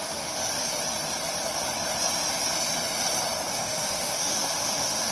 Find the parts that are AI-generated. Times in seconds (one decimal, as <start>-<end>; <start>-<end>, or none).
0.0-0.4; 3.5-5.1